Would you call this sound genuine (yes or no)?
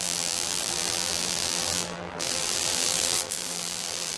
no